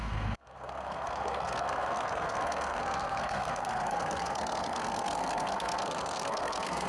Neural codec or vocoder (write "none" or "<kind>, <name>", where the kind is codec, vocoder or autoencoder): codec, SNAC